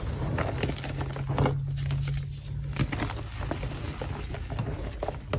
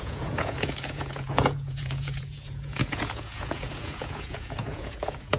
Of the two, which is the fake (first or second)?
second